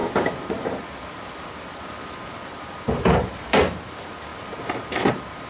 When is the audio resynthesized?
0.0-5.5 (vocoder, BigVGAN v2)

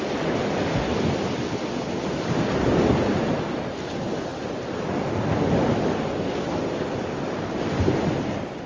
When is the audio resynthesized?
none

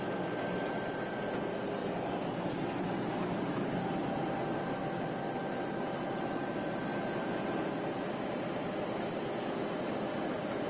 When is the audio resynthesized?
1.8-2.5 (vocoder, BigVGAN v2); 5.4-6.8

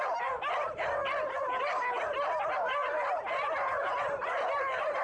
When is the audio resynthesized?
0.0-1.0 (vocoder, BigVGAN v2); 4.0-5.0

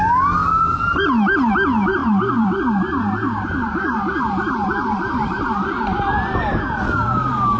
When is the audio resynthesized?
2.0-6.6 (vocoder, BigVGAN v2)

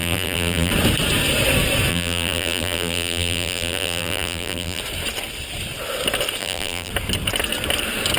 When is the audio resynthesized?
0.0-0.7 (vocoder, BigVGAN v2); 1.9-4.8; 6.4-6.9

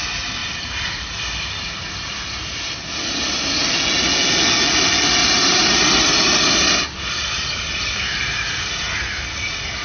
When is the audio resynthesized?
0.4-3.7 (vocoder, BigVGAN v2); 5.2-8.7